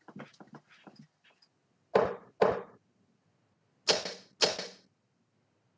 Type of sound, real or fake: real